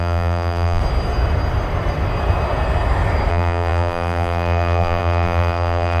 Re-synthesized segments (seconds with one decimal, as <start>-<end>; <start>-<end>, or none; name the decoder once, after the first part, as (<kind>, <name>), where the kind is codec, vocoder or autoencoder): 0.0-0.8 (vocoder, BigVGAN v2); 3.3-6.0